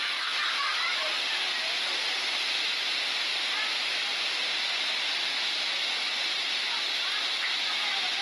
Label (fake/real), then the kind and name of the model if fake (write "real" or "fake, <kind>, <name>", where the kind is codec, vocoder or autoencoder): real